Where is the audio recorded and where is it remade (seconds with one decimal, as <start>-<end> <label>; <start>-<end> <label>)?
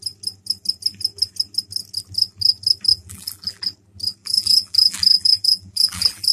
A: 0.0-2.9 recorded; 2.9-3.6 remade; 3.6-4.2 recorded; 4.2-6.3 remade